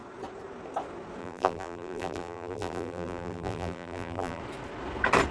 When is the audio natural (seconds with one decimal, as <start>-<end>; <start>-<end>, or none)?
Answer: 0.0-1.2; 4.4-5.3